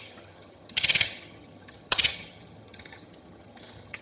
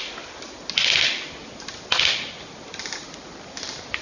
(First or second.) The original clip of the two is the second